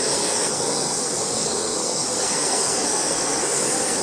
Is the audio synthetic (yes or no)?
yes